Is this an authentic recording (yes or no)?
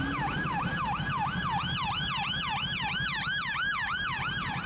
yes